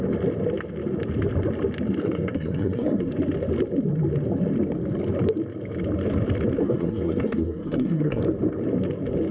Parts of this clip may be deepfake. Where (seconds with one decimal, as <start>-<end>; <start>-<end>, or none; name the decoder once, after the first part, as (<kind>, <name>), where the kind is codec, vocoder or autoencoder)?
2.0-3.1 (codec, SNAC); 6.6-8.2